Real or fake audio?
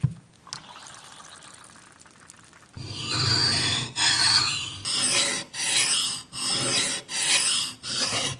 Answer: real